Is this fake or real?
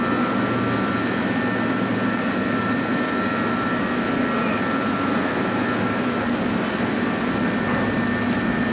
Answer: real